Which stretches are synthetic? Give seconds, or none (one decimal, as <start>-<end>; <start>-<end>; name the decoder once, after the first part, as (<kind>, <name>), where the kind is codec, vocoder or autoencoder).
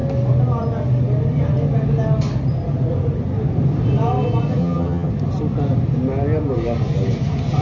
4.6-5.1 (vocoder, HiFi-GAN)